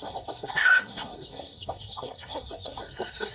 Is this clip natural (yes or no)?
no